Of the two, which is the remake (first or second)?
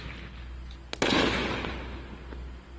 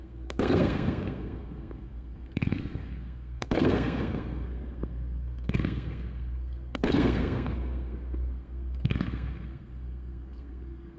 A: second